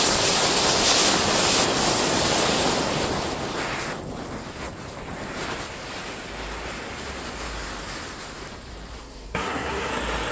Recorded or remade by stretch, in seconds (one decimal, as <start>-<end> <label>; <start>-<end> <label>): 0.0-9.0 recorded; 9.0-9.9 remade; 9.9-10.3 recorded

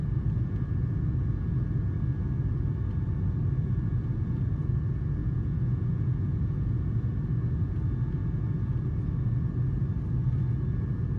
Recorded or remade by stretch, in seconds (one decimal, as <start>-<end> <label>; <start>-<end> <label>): 0.0-5.2 recorded; 5.2-7.0 remade; 7.0-11.2 recorded

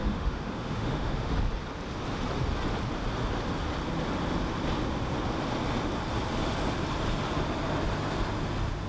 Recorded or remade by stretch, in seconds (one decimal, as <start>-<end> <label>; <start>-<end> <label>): 0.0-1.3 remade; 1.3-8.9 recorded

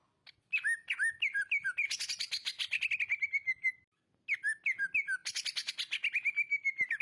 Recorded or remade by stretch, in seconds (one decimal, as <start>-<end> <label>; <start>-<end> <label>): 0.0-7.0 recorded

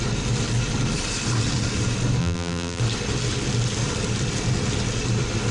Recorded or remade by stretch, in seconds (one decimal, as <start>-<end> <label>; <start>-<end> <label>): 0.0-2.2 recorded; 2.2-2.8 remade; 2.8-5.5 recorded